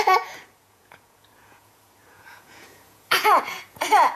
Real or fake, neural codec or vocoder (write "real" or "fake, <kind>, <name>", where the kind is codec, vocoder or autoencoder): fake, vocoder, Vocos